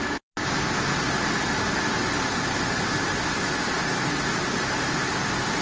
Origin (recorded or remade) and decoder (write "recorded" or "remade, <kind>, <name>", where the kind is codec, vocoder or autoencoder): recorded